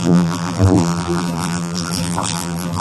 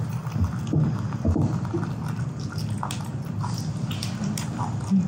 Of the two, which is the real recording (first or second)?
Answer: second